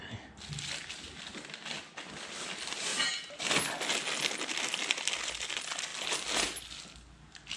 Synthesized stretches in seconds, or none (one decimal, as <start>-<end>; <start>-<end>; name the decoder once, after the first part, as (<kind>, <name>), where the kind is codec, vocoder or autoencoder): none